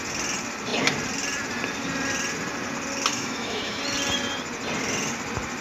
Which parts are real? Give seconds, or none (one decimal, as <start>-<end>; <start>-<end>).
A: 0.0-3.1; 3.8-5.6